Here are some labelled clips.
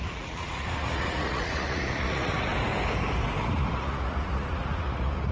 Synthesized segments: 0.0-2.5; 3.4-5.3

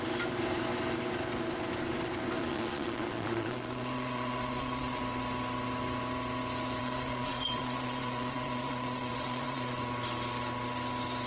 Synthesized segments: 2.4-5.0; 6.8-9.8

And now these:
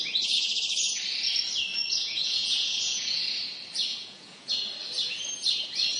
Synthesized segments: 1.7-3.2; 3.9-4.5